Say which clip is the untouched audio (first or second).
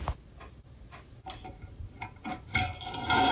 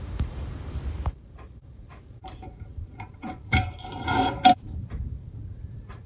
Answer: first